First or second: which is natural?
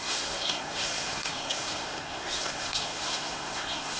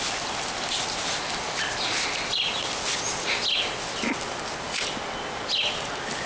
second